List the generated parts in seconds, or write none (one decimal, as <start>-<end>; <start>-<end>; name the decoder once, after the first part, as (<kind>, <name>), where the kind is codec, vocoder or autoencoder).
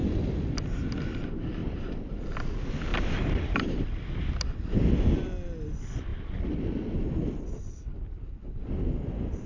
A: 0.0-0.7 (vocoder, BigVGAN v2); 1.6-2.4; 2.9-4.0; 6.1-8.3